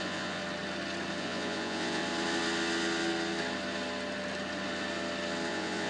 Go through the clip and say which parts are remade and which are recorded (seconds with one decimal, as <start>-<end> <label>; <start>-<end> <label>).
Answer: 0.0-0.4 remade; 0.4-1.2 recorded; 1.2-2.0 remade; 2.0-5.5 recorded; 5.5-5.9 remade